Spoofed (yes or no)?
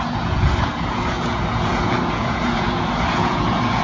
yes